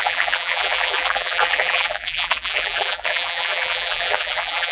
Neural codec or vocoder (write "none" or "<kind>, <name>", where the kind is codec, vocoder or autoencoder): vocoder, BigVGAN v2